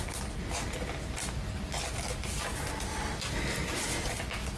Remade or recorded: recorded